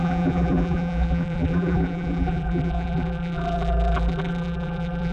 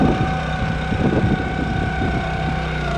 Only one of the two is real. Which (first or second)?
second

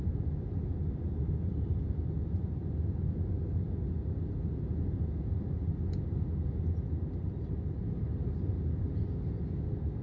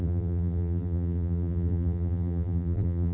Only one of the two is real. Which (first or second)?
first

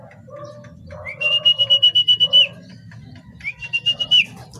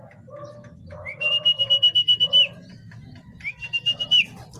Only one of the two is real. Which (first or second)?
second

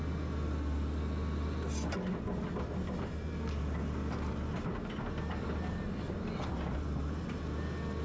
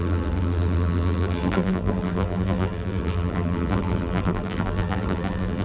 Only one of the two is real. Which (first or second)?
first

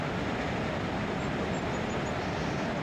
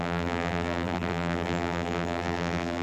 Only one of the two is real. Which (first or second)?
first